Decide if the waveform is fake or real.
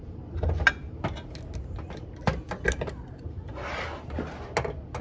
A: real